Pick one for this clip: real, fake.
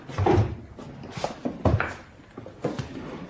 real